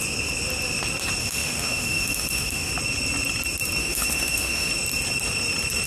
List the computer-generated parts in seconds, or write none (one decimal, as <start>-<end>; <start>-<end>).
1.2-2.7; 3.8-4.7